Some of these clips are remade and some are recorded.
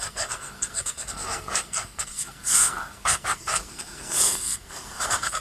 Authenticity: remade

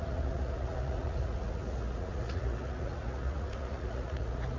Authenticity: remade